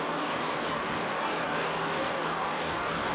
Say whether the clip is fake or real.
fake